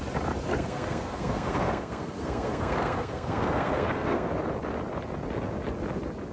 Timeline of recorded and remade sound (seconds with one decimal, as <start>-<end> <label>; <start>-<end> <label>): 0.0-0.5 recorded; 0.5-4.3 remade; 4.3-6.3 recorded